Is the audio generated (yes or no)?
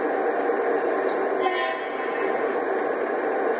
no